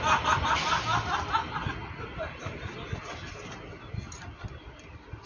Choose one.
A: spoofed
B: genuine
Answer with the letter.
B